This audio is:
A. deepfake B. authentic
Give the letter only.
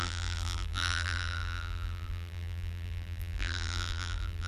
A